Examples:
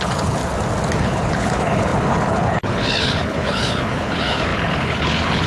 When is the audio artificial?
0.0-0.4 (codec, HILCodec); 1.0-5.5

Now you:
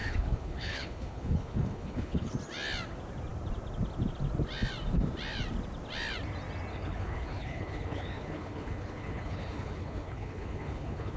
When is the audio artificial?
0.0-2.3 (codec, HILCodec); 6.7-11.2

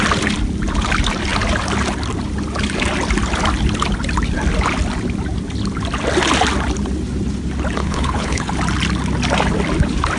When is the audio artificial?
7.8-8.5 (codec, HILCodec)

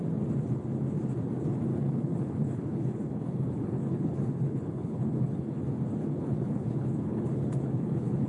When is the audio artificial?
1.7-5.6 (codec, HILCodec); 6.0-8.3